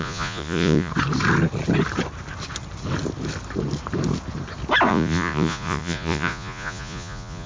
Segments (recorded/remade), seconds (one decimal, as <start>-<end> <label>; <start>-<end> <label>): 0.0-0.9 remade; 0.9-4.9 recorded; 4.9-7.5 remade